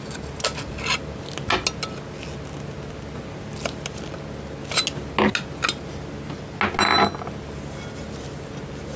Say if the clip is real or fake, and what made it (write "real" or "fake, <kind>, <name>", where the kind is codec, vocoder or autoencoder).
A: real